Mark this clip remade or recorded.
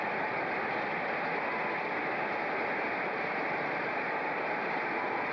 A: recorded